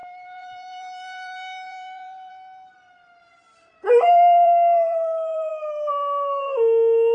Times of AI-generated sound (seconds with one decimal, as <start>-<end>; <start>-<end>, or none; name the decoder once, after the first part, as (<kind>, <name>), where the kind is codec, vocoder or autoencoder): 0.0-2.3 (vocoder, BigVGAN v2); 3.3-5.5